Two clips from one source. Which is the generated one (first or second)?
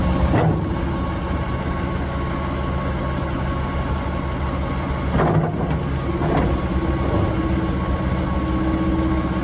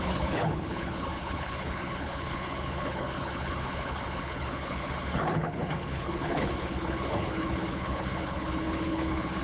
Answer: second